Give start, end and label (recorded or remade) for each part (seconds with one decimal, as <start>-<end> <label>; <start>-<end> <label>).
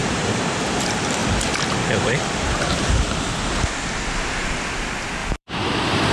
0.0-5.2 recorded; 5.2-6.1 remade